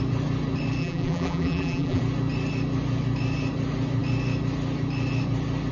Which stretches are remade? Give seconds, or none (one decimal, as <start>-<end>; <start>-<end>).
0.8-2.0